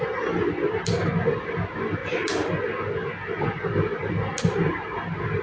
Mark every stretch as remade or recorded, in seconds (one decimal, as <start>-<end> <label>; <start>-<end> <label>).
0.0-5.4 recorded